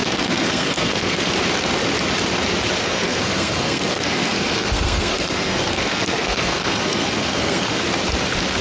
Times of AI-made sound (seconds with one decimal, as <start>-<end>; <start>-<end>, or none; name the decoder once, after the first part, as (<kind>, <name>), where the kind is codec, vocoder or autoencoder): 0.0-1.3 (codec, SNAC); 2.8-7.8